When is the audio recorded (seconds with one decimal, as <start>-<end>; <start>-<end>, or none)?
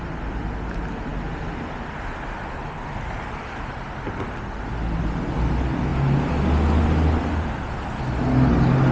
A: 0.0-8.9